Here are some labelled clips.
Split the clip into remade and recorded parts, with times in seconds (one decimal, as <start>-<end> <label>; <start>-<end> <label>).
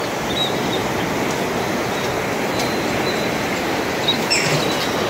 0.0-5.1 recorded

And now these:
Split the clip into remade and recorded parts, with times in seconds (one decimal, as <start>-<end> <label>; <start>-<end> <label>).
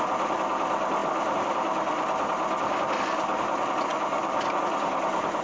0.0-5.4 recorded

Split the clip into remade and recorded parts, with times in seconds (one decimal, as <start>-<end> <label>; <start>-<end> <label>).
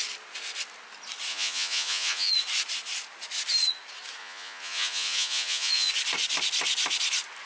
0.0-1.3 recorded; 1.3-2.3 remade; 2.3-4.2 recorded; 4.2-5.9 remade; 5.9-7.5 recorded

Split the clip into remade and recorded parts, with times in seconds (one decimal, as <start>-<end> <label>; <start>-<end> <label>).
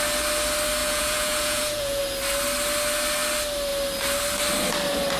0.0-0.8 recorded; 0.8-2.0 remade; 2.0-5.2 recorded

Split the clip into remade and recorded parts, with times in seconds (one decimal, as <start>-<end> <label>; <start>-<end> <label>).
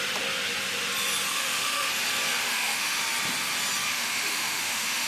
0.0-1.3 recorded; 1.3-1.9 remade; 1.9-2.4 recorded; 2.4-3.0 remade; 3.0-3.9 recorded; 3.9-5.1 remade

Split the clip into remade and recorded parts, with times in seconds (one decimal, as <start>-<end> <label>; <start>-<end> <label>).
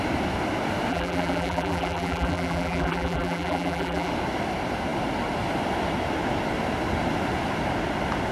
0.0-0.9 recorded; 0.9-4.1 remade; 4.1-8.3 recorded